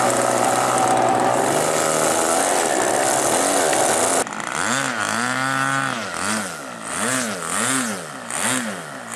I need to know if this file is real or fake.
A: real